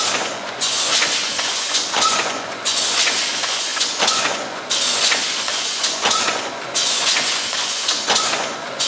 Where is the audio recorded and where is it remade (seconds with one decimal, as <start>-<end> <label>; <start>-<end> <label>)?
0.0-8.9 remade